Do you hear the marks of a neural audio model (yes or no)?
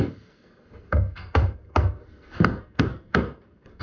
yes